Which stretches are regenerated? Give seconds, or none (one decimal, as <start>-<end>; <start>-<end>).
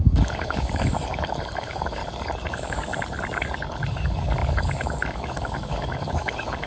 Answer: 0.0-2.0; 2.5-2.9; 3.9-6.7